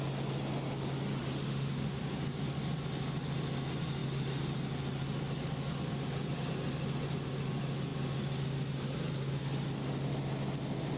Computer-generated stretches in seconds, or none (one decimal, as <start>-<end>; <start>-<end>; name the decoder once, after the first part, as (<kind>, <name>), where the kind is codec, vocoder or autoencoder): 1.2-2.0 (autoencoder, DAC-VAE)